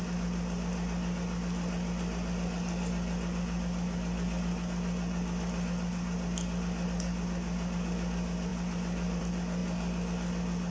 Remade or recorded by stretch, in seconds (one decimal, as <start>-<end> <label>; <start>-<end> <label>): 0.0-10.7 recorded